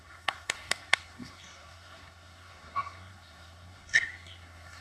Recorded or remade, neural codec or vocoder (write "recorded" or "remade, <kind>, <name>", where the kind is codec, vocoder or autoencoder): remade, codec, SNAC